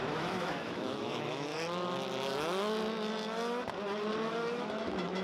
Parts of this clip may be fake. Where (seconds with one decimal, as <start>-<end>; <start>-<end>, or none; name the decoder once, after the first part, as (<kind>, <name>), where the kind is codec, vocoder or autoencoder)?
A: 0.0-1.5 (autoencoder, DAC-VAE); 4.6-5.2